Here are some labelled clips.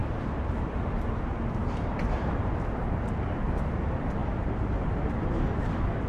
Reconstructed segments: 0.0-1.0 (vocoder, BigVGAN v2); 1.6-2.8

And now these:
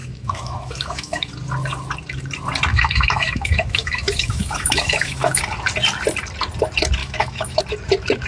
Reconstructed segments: 0.0-1.3 (autoencoder, DAC-VAE); 2.7-5.4; 7.0-7.6